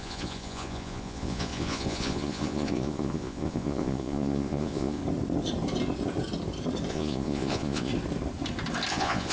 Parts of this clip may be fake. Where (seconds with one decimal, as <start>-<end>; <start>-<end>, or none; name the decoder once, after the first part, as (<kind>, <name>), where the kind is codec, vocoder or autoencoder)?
0.0-5.0 (vocoder, Vocos); 6.9-7.9; 8.9-9.3